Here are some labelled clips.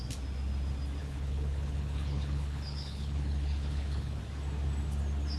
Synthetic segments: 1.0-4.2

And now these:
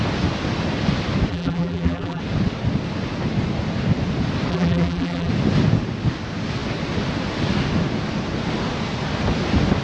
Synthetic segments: 1.3-2.2; 4.5-5.3